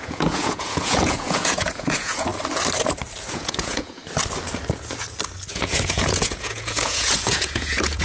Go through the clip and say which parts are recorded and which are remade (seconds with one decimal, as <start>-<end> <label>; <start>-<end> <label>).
0.0-2.3 remade; 2.3-3.3 recorded; 3.3-4.0 remade; 4.0-5.5 recorded; 5.5-8.0 remade